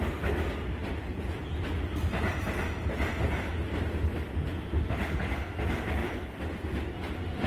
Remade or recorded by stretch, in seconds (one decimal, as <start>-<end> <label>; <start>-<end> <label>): 0.0-6.0 recorded; 6.0-6.6 remade; 6.6-7.5 recorded